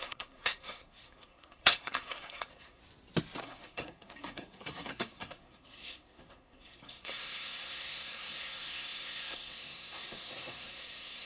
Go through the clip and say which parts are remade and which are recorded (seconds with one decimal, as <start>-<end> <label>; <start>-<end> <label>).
0.0-2.8 remade; 2.8-3.4 recorded; 3.4-11.3 remade